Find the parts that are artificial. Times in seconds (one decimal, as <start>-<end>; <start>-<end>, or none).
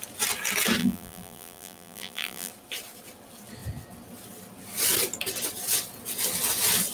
0.8-2.5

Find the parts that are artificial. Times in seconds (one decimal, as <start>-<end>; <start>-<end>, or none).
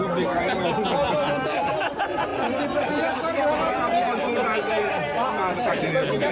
none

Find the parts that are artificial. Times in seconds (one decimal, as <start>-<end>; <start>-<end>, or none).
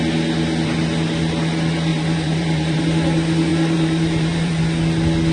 1.9-2.8; 3.5-4.6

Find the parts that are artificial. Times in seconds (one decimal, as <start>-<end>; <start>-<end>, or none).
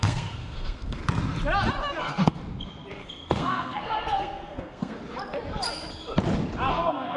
0.0-1.0; 2.0-2.4; 2.9-5.0; 6.7-7.2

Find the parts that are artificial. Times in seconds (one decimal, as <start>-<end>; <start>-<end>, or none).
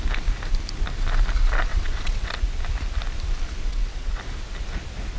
1.7-2.3; 3.7-4.2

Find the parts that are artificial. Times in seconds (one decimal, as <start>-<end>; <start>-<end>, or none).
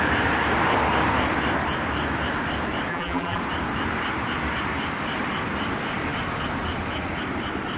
2.9-3.4